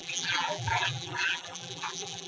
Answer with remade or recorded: remade